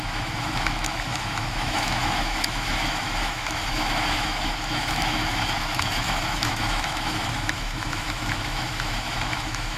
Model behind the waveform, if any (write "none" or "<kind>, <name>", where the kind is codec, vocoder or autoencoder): autoencoder, DAC-VAE